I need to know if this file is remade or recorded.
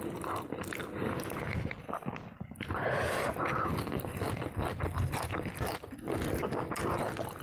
recorded